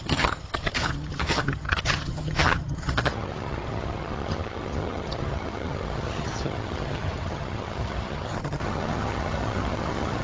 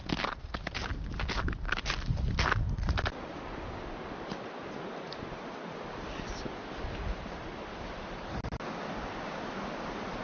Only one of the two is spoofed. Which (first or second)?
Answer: first